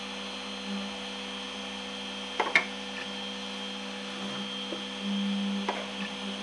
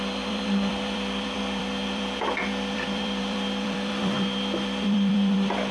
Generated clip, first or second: second